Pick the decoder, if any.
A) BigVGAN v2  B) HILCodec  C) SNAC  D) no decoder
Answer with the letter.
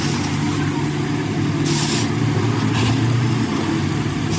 D